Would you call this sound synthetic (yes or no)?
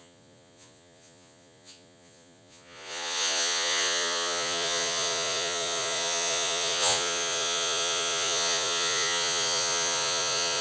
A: yes